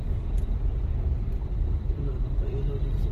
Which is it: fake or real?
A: real